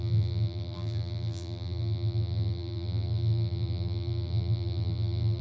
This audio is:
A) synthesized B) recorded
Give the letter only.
A